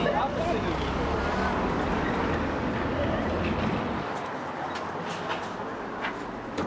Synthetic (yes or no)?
no